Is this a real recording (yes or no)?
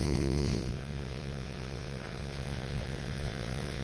no